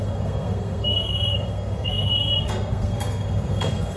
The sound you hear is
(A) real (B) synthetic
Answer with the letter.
B